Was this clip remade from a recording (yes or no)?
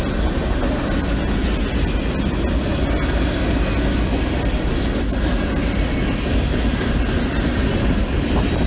no